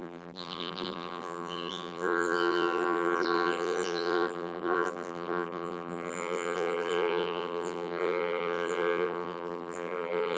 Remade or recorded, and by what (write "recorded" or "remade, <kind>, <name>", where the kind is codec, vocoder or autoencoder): remade, vocoder, BigVGAN v2